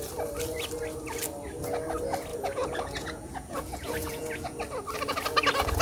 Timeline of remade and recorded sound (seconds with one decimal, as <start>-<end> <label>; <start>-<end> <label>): 0.0-2.3 recorded; 2.3-4.6 remade; 4.6-5.8 recorded